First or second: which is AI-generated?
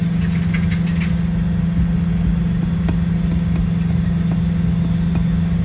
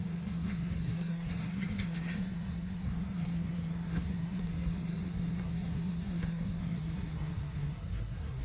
second